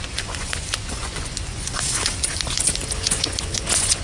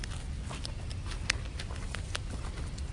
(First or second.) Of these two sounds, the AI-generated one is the first